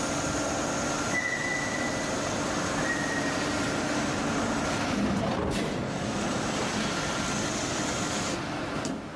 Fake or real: real